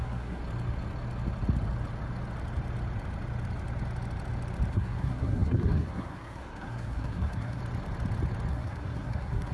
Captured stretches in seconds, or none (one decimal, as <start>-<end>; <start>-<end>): 0.4-4.7; 7.6-8.5